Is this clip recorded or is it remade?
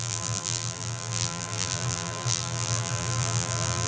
remade